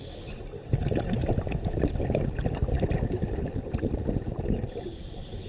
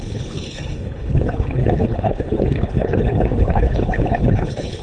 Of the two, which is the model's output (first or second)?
second